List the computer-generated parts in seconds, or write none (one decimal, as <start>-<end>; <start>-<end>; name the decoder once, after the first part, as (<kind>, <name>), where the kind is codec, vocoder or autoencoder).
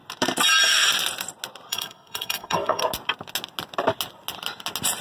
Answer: 1.7-2.8 (codec, SNAC)